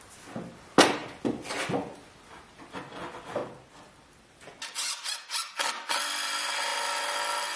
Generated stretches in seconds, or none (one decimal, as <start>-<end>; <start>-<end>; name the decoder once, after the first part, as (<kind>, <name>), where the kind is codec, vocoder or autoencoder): none